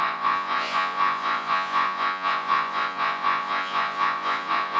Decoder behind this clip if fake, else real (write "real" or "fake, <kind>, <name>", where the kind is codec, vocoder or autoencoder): fake, vocoder, Vocos